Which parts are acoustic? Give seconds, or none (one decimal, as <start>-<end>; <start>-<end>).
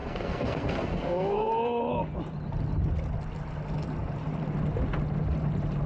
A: 1.8-5.9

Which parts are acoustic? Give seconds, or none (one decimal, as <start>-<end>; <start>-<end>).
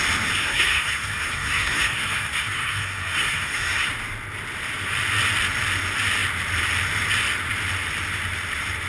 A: 0.0-0.4; 3.9-8.9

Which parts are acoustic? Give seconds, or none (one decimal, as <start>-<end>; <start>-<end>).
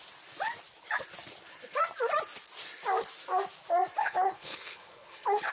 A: 0.0-4.0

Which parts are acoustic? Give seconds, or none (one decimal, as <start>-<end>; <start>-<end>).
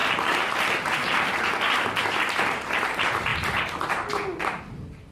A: 0.0-3.3; 4.6-5.1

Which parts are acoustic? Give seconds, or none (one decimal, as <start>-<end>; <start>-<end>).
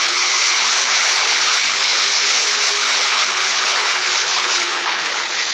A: none